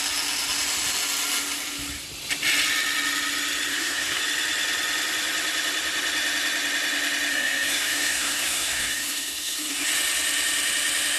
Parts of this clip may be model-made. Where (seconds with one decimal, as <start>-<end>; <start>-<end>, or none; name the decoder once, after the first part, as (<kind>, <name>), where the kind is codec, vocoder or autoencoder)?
3.7-4.2 (codec, SNAC); 7.3-9.9